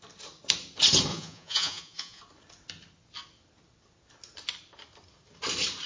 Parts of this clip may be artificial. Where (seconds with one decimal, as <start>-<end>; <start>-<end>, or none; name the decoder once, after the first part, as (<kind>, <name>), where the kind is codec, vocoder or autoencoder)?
1.1-2.2 (vocoder, Vocos)